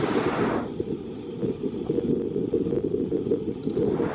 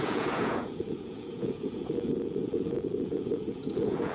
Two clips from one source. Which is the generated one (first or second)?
second